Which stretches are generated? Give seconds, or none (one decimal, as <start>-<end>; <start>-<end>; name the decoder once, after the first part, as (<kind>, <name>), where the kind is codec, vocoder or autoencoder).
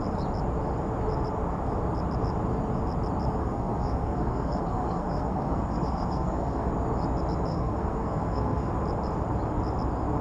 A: 3.4-6.7 (codec, SNAC); 7.5-8.7